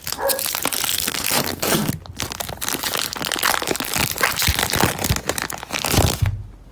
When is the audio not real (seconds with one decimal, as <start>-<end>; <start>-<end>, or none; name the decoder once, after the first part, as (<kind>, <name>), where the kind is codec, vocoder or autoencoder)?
0.9-1.9 (codec, SNAC)